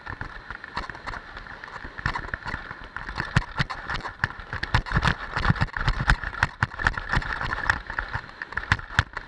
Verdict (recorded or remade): recorded